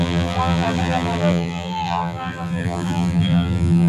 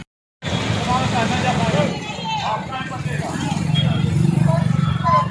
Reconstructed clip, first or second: first